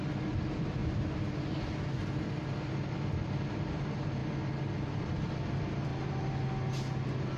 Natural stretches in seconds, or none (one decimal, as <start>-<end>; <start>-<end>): 0.8-1.9; 4.2-5.2; 5.9-7.4